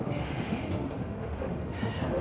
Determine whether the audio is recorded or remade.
remade